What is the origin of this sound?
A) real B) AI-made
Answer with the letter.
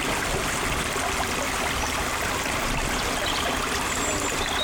A